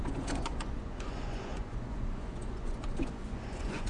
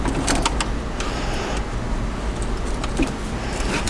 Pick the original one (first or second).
second